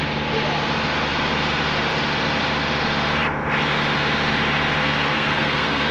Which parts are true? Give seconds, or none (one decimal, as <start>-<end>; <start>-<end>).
0.0-4.8